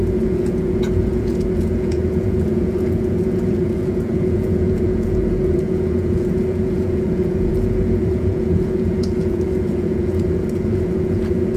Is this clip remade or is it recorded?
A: remade